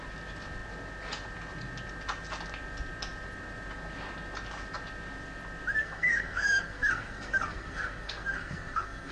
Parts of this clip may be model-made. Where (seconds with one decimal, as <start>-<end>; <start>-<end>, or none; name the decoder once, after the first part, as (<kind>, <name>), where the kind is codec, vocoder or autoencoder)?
5.8-9.1 (codec, SNAC)

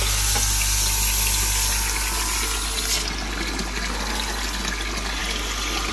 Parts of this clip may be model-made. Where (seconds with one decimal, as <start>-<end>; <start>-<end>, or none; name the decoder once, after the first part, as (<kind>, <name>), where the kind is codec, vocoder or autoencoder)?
none

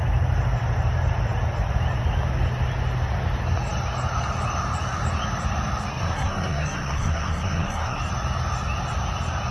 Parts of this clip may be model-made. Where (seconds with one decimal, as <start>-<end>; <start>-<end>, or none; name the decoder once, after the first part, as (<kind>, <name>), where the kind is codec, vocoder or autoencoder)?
5.9-8.0 (codec, SNAC)